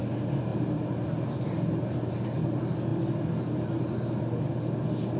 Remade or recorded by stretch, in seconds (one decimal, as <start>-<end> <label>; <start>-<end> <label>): 0.0-0.5 recorded; 0.5-2.1 remade; 2.1-2.9 recorded; 2.9-4.4 remade; 4.4-5.2 recorded